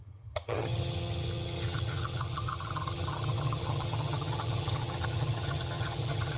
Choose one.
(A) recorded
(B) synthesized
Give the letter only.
B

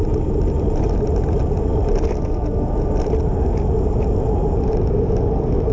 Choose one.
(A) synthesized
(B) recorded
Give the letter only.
B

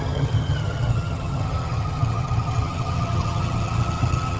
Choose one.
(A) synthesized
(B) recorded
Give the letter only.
A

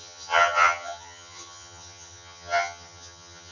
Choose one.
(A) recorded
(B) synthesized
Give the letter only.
B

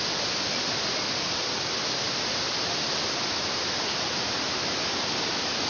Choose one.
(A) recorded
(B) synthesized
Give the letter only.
A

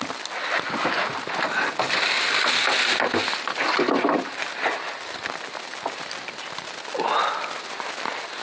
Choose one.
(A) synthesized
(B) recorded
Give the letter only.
B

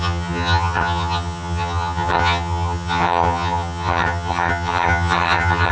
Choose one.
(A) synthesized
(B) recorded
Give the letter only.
A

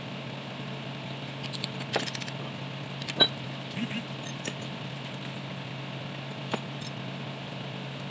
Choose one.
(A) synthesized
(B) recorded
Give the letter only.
B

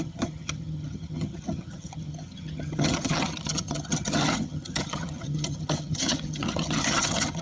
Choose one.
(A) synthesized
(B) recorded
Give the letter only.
A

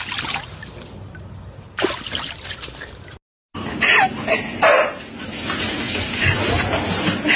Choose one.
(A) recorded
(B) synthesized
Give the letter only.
A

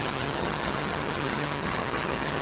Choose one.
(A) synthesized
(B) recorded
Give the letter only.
A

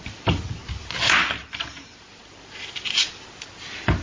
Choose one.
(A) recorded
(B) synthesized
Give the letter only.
A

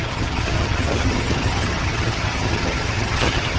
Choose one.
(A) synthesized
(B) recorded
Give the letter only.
A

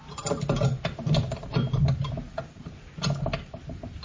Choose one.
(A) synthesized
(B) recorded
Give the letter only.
B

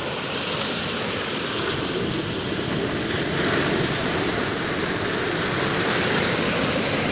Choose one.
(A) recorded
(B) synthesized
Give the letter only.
A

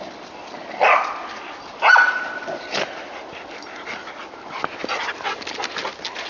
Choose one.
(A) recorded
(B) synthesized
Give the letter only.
A